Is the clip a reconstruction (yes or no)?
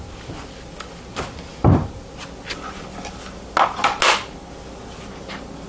no